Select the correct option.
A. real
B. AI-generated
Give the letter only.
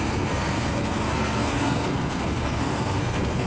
B